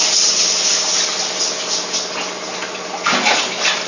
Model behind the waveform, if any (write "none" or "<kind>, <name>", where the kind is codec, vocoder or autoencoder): none